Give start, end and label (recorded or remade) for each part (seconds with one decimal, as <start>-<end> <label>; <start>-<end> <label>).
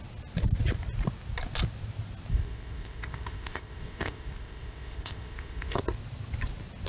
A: 0.0-2.3 recorded; 2.3-5.8 remade; 5.8-6.9 recorded